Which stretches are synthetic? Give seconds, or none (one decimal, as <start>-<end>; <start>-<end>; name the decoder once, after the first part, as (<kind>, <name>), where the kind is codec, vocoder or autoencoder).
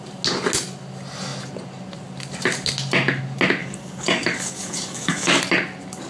3.6-5.4 (codec, DAC)